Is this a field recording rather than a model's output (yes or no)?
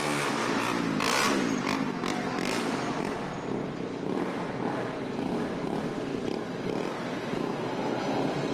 yes